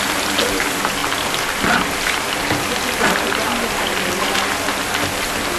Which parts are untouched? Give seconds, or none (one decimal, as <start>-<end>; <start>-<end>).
0.0-5.6